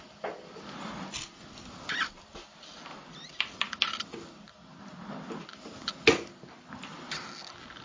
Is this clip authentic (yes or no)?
yes